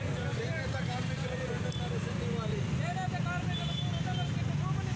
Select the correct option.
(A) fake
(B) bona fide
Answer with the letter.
B